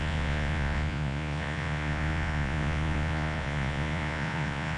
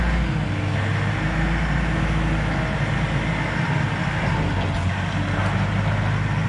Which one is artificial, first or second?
first